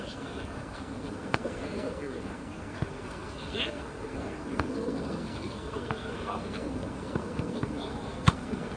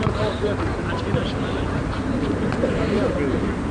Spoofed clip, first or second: first